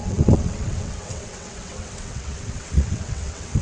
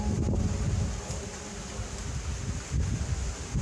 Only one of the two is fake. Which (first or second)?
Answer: first